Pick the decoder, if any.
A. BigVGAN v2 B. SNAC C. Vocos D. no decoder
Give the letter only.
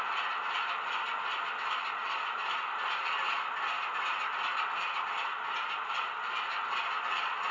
D